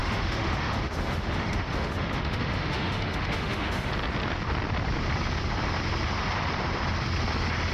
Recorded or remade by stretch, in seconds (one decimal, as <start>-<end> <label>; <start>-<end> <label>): 0.0-3.9 remade; 3.9-7.7 recorded